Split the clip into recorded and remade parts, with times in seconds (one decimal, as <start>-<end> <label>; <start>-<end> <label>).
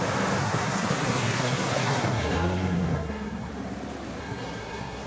0.0-0.4 recorded; 0.4-3.5 remade; 3.5-4.2 recorded; 4.2-5.1 remade